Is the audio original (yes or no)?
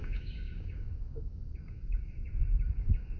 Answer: no